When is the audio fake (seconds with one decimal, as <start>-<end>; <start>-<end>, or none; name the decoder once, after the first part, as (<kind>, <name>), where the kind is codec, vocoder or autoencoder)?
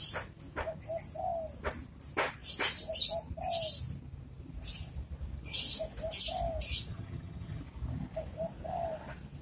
6.9-7.6 (vocoder, HiFi-GAN)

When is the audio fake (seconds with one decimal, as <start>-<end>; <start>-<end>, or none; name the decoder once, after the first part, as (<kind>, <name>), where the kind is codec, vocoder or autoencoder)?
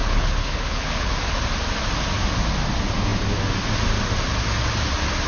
0.0-1.1 (codec, HILCodec)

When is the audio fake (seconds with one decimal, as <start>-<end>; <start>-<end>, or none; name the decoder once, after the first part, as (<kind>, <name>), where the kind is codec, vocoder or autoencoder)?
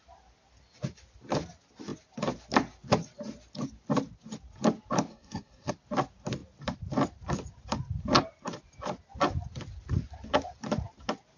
5.1-5.7 (codec, SNAC)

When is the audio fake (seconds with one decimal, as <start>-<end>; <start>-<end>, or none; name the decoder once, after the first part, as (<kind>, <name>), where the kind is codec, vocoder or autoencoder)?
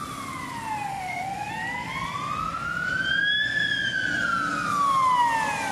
0.9-1.5 (autoencoder, DAC-VAE)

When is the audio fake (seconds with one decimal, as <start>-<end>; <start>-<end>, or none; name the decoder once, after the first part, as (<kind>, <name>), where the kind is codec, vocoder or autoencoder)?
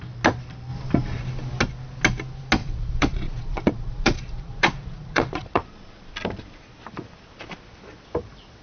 2.6-6.0 (vocoder, Vocos)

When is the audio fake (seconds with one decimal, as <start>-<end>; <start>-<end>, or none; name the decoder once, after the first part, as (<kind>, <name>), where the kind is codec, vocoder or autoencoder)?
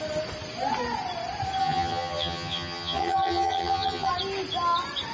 1.6-4.1 (vocoder, HiFi-GAN)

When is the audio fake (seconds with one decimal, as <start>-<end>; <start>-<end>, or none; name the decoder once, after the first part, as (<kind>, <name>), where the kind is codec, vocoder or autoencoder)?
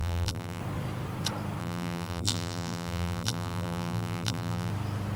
0.0-0.6 (vocoder, BigVGAN v2); 1.6-4.7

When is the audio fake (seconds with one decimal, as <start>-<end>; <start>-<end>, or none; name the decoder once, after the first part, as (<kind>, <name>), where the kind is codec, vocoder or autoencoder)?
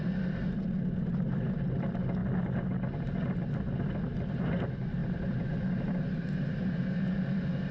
0.0-2.2 (vocoder, BigVGAN v2); 2.7-7.7